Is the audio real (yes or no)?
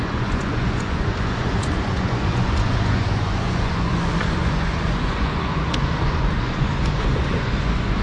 no